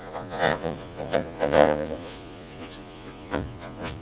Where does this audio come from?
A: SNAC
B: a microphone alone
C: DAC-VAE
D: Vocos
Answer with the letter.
D